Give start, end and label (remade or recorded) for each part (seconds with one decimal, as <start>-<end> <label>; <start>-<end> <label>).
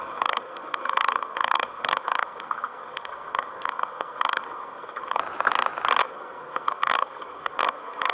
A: 0.0-5.2 remade; 5.2-6.0 recorded; 6.0-8.1 remade